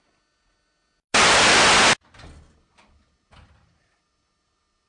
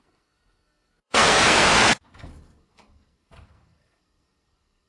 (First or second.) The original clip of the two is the first